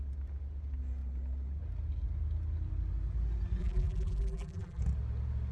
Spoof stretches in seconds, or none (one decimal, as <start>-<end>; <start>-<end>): 3.6-4.8